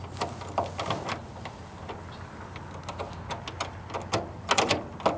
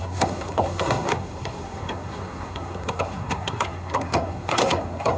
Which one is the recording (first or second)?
first